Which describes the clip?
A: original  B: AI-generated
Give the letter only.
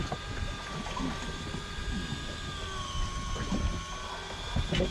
A